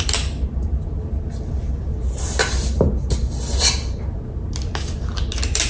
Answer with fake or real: real